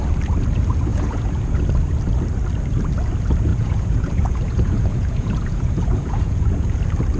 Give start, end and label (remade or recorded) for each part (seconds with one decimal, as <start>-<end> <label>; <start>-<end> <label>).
0.0-0.9 recorded; 0.9-1.6 remade; 1.6-3.5 recorded; 3.5-6.8 remade; 6.8-7.2 recorded